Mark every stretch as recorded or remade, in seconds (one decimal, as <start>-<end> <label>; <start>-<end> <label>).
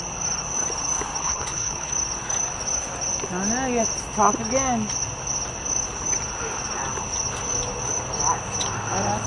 0.0-1.2 recorded; 1.2-1.9 remade; 1.9-9.3 recorded